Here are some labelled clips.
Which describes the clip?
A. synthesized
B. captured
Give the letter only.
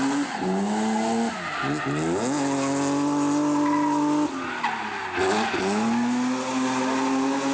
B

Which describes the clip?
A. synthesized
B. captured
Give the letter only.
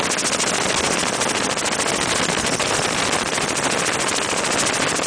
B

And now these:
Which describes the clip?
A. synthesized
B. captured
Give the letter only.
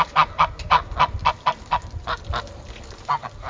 B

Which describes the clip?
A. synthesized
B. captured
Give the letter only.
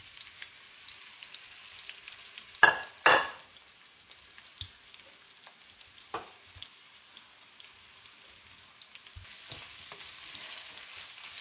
B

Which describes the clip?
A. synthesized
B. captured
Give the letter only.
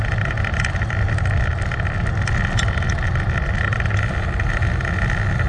B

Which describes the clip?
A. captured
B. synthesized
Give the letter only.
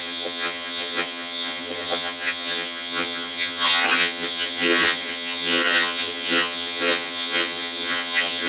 B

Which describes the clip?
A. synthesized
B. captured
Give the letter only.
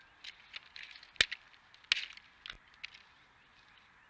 B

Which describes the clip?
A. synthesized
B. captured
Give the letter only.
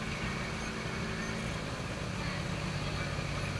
B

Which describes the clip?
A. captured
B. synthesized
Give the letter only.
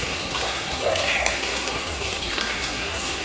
B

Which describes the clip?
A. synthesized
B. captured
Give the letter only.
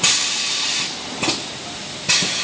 B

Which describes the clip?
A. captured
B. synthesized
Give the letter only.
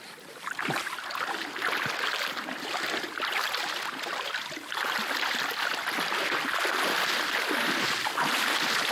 A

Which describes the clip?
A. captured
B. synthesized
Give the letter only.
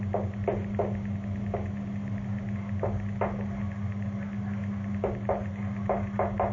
A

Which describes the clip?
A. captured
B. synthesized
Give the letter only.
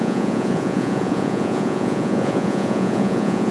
B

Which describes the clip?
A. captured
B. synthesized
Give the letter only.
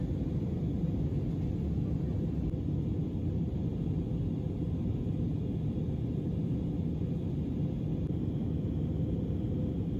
A